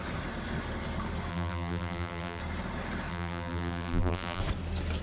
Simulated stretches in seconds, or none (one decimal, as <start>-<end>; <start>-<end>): 1.3-2.4; 3.1-4.4